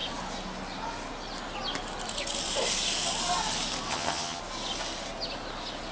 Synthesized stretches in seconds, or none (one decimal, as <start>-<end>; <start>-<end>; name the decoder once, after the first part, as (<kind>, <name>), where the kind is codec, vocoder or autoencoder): 3.9-4.4 (vocoder, HiFi-GAN)